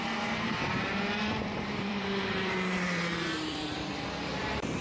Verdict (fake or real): fake